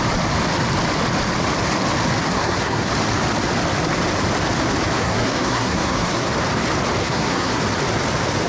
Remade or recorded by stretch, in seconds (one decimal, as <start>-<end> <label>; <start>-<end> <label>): 0.0-2.2 recorded; 2.2-2.9 remade; 2.9-5.0 recorded; 5.0-6.3 remade; 6.3-7.0 recorded; 7.0-7.6 remade; 7.6-8.5 recorded